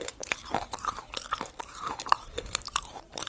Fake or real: fake